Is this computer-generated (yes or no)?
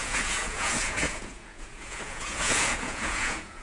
yes